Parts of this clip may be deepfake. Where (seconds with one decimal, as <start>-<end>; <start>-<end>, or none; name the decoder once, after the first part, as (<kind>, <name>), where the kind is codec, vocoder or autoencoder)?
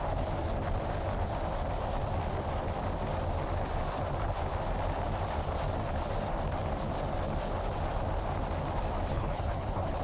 9.1-10.0 (codec, HILCodec)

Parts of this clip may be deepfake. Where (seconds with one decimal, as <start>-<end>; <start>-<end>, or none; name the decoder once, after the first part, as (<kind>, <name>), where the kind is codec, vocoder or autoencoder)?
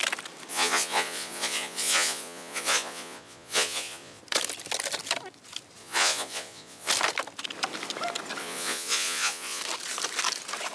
0.5-4.2 (vocoder, Vocos); 5.8-6.9; 8.4-9.6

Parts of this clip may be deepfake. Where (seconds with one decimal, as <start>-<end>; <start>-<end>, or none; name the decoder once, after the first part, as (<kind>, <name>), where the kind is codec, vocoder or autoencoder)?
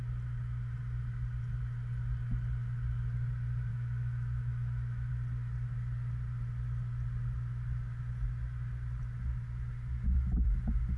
3.7-5.1 (autoencoder, DAC-VAE)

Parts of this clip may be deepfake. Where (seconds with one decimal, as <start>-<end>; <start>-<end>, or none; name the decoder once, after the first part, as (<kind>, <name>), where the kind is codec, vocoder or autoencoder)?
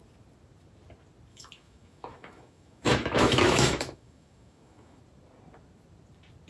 1.3-5.0 (autoencoder, DAC-VAE)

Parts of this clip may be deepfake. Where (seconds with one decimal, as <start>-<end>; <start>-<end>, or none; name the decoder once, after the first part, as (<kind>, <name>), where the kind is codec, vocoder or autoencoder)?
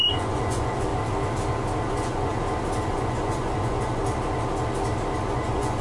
0.0-0.9 (vocoder, Vocos); 1.9-2.3; 2.9-4.0; 5.3-5.8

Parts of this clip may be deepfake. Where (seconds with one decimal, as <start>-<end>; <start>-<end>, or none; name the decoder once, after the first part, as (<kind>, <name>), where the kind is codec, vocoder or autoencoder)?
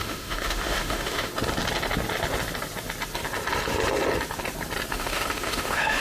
0.0-1.3 (autoencoder, DAC-VAE); 4.9-6.0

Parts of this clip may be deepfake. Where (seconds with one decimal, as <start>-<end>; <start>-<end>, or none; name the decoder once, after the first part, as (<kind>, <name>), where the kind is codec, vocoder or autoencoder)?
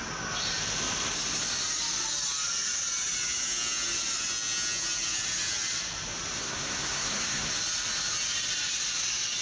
6.4-7.5 (codec, SNAC)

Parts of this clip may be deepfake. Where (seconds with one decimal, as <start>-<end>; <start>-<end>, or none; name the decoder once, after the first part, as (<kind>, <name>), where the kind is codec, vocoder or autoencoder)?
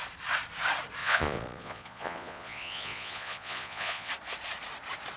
1.0-4.1 (vocoder, Vocos)